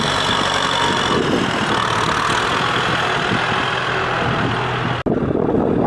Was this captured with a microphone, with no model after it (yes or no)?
yes